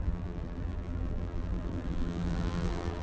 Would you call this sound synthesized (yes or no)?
yes